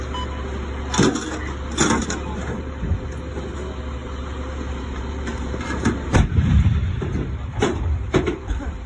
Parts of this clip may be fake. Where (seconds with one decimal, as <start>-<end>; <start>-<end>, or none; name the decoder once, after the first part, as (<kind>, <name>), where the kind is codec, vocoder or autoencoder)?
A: 2.0-2.9 (vocoder, BigVGAN v2); 4.0-8.9